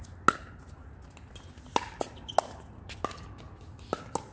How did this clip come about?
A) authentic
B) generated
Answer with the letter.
A